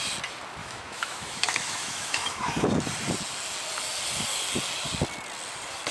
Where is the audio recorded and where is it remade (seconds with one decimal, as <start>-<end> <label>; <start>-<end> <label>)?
0.0-0.6 recorded; 0.6-2.7 remade; 2.7-5.9 recorded